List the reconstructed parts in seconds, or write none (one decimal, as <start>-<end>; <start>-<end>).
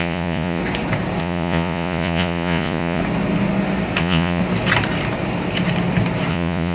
0.0-0.6; 1.2-3.0; 4.0-4.4; 6.3-6.7